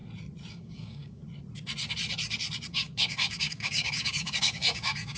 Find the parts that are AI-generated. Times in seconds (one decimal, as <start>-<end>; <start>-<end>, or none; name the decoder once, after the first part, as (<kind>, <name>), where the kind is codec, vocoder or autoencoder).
0.5-1.2 (codec, DAC); 2.7-5.2